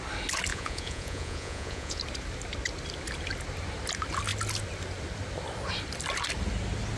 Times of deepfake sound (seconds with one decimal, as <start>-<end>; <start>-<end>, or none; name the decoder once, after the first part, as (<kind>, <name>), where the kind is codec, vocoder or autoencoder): 0.5-2.0 (vocoder, Vocos)